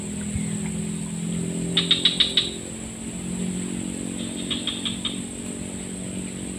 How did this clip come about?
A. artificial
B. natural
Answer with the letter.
B